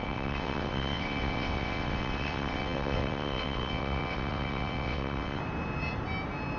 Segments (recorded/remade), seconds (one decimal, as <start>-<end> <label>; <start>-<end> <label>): 0.0-5.4 remade; 5.4-6.6 recorded